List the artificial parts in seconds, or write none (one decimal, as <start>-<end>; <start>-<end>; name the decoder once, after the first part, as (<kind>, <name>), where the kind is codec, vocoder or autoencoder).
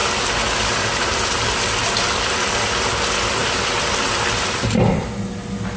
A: none